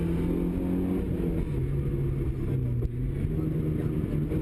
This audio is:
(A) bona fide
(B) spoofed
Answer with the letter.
A